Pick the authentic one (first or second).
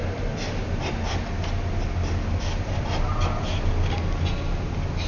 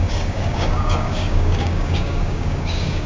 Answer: first